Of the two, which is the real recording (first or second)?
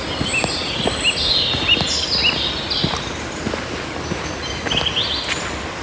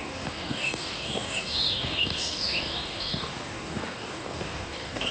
first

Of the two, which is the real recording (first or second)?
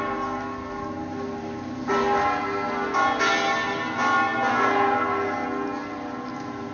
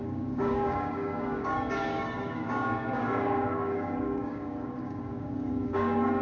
first